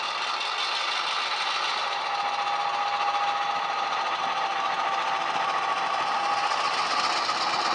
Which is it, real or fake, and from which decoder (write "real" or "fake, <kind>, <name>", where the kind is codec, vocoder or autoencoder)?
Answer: real